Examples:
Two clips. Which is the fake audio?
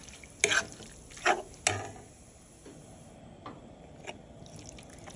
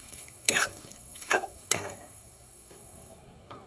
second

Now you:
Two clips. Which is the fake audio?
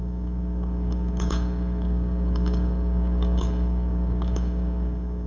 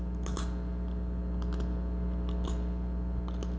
first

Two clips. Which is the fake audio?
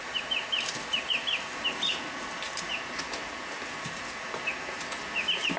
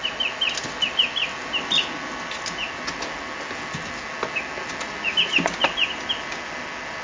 first